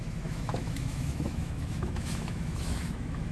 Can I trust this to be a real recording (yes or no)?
no